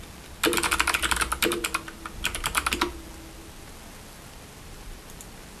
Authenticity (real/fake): real